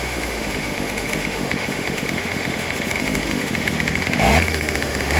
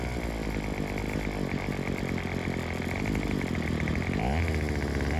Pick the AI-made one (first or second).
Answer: first